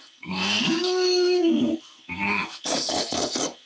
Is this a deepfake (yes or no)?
yes